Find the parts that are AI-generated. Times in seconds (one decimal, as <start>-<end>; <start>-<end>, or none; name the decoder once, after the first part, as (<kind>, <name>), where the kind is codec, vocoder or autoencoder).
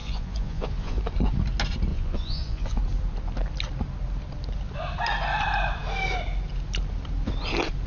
0.0-1.0 (vocoder, Vocos); 1.9-2.8